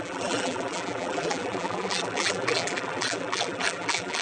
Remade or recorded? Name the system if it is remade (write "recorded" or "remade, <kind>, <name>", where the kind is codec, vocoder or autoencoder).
remade, vocoder, BigVGAN v2